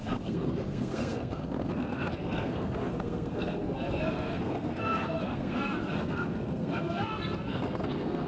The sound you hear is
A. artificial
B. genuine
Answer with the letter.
A